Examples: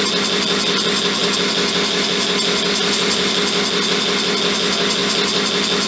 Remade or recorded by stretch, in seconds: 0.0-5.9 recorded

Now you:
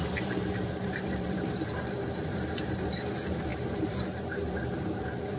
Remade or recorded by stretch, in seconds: 0.0-5.4 remade